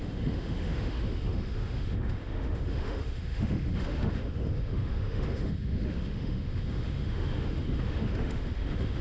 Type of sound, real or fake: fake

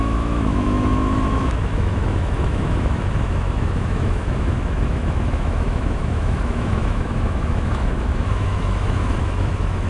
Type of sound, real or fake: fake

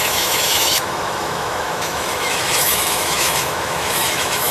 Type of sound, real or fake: fake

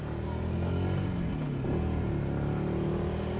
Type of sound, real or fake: real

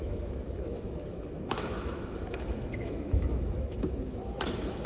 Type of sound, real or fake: fake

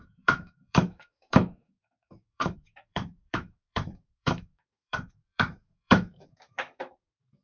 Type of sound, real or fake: fake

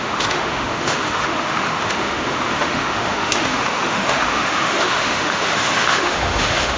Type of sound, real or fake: fake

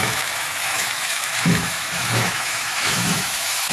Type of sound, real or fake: fake